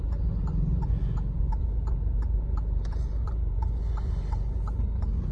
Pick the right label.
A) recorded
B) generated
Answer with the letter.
B